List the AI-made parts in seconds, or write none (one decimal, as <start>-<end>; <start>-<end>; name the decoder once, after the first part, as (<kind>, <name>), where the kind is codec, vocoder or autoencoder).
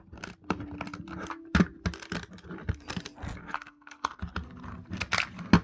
3.4-4.2 (codec, SNAC)